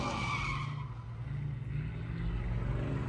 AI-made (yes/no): no